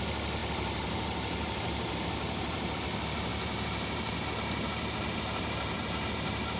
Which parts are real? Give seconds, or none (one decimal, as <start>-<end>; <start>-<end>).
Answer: 0.0-0.4; 2.8-3.3

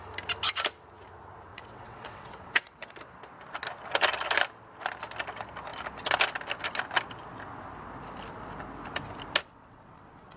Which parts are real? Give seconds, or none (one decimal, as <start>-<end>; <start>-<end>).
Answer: 0.0-1.5; 2.9-9.4

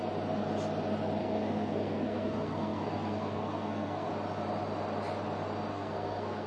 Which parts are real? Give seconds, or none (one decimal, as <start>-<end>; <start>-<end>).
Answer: 0.0-1.2; 4.1-5.7

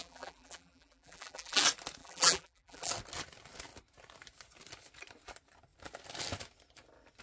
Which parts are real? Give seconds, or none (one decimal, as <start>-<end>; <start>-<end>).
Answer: 1.6-2.0; 2.9-7.2